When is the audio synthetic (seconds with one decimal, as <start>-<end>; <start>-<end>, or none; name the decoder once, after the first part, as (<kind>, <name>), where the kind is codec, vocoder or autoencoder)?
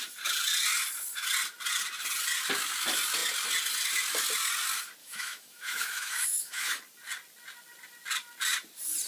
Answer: 5.0-6.8 (autoencoder, DAC-VAE)